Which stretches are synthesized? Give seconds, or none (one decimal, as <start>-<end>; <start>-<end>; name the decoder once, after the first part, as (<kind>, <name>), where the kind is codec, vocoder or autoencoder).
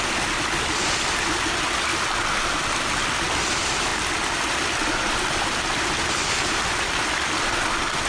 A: none